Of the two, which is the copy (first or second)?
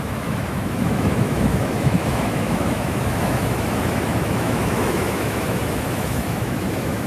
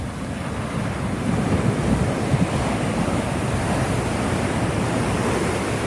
first